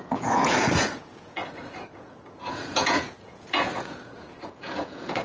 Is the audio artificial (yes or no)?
yes